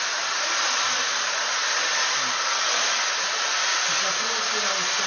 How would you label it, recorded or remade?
recorded